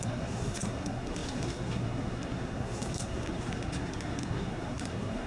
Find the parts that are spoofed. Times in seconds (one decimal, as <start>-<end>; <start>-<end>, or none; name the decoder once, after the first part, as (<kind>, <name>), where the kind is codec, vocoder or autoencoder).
0.0-5.3 (codec, SNAC)